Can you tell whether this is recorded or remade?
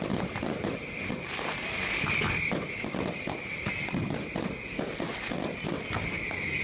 recorded